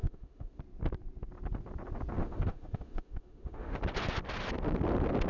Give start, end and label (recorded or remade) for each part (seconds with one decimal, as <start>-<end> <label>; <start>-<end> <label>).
0.0-0.6 remade; 0.6-2.2 recorded; 2.2-3.8 remade; 3.8-5.3 recorded